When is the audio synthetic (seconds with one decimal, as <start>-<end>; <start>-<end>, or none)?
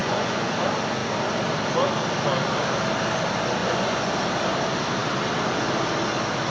0.0-0.5; 3.6-4.1